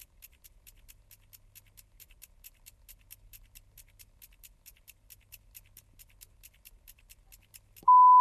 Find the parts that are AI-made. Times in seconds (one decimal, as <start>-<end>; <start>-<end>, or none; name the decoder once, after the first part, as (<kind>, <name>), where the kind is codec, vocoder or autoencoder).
none